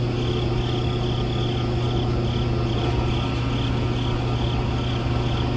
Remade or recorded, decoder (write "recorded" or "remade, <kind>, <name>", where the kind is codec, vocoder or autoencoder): recorded